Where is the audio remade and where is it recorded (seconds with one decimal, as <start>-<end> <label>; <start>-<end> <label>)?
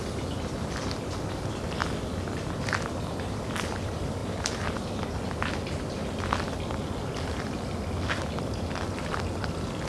0.0-9.9 recorded